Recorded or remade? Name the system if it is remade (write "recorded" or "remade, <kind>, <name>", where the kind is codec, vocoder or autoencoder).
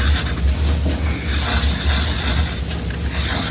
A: recorded